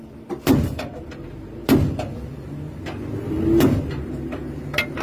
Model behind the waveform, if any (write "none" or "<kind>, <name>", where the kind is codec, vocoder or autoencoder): none